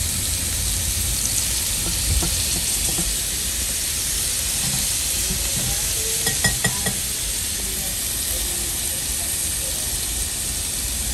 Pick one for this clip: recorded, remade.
recorded